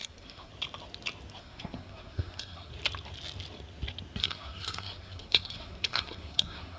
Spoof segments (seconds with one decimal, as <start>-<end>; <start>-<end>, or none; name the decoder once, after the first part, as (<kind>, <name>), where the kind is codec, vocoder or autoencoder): 0.0-0.5 (codec, SNAC); 1.4-2.7; 4.2-6.8